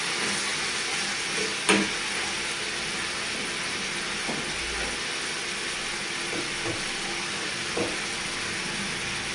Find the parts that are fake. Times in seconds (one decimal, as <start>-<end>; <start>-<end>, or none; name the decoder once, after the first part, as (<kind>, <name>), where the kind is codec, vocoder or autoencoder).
none